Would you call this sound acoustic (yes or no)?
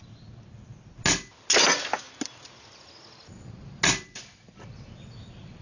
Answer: yes